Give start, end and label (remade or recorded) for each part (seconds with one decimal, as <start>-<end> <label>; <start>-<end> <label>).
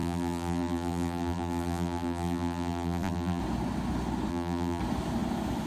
0.0-3.4 remade; 3.4-4.3 recorded; 4.3-4.8 remade; 4.8-5.7 recorded